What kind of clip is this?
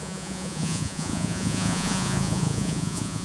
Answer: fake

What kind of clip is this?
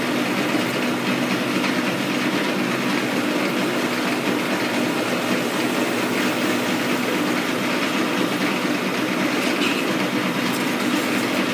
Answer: real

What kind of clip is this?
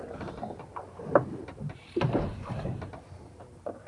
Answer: real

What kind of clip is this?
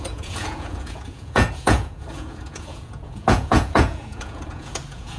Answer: fake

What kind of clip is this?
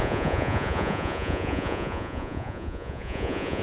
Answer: fake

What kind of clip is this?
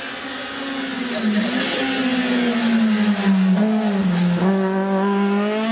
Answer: real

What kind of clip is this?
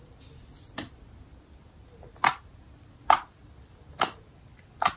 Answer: real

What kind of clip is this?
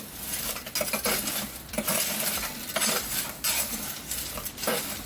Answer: real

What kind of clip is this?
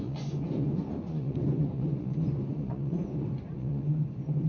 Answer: fake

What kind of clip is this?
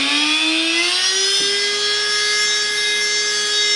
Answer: real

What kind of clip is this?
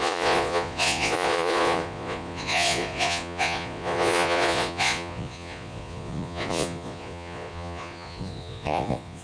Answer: fake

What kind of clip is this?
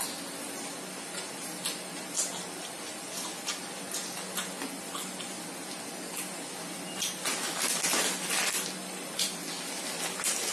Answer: real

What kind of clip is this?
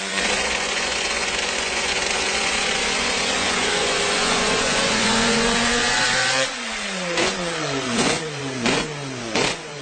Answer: fake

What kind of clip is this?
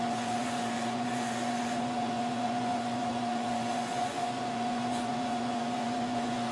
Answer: fake